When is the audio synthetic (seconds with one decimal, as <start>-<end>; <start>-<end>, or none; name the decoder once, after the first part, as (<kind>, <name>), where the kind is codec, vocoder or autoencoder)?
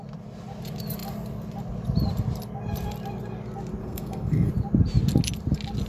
3.8-4.5 (codec, SNAC)